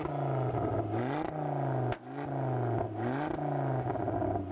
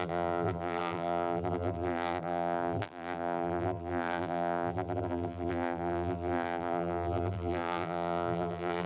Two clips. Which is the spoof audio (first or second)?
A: second